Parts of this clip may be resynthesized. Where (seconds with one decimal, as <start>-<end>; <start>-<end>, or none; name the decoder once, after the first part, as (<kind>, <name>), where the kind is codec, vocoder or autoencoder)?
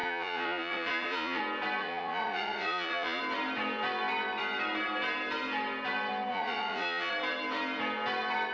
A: 0.0-1.4 (vocoder, Vocos); 1.8-3.2; 6.3-7.1